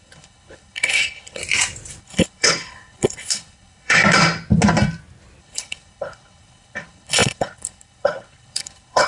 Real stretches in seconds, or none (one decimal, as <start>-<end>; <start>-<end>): 1.4-2.0; 4.0-5.4